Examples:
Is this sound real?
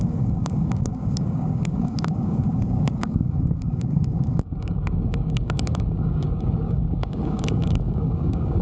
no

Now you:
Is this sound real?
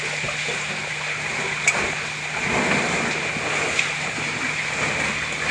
yes